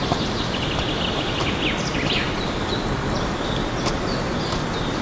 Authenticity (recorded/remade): recorded